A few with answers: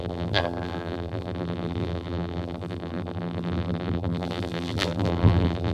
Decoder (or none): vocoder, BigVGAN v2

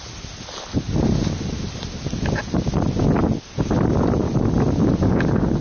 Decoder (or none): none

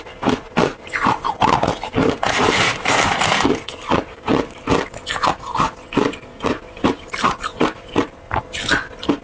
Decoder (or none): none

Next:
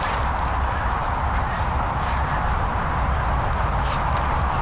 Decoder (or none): vocoder, BigVGAN v2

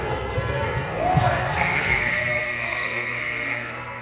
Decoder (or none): codec, SNAC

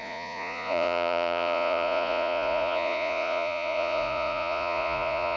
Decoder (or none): vocoder, Vocos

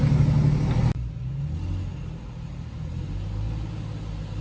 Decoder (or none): none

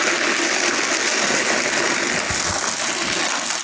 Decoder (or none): none